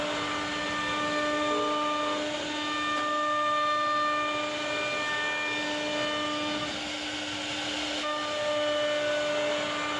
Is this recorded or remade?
recorded